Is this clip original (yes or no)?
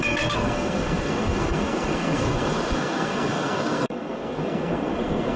no